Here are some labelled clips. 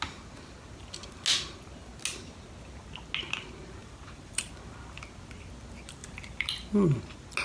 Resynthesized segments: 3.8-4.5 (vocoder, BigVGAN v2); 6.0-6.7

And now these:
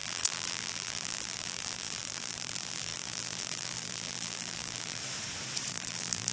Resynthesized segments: 0.0-5.0 (vocoder, BigVGAN v2); 5.7-6.3

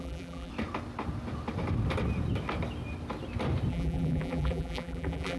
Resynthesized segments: 0.0-0.5 (vocoder, BigVGAN v2); 3.7-5.4

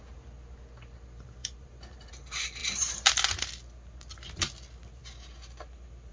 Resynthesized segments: 1.4-2.1 (vocoder, BigVGAN v2); 2.6-3.2

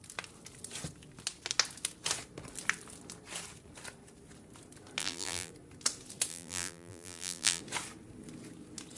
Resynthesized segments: 5.0-5.5 (vocoder, BigVGAN v2); 6.3-7.6

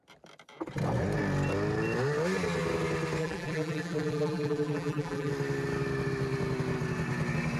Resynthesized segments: 3.2-5.3 (vocoder, BigVGAN v2)